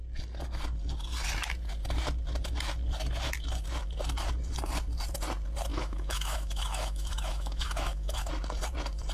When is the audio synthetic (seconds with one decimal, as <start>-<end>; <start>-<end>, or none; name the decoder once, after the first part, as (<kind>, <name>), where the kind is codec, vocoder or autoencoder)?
5.7-8.3 (autoencoder, DAC-VAE)